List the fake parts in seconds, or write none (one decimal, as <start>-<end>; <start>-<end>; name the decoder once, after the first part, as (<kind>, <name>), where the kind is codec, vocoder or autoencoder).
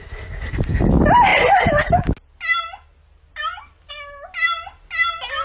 none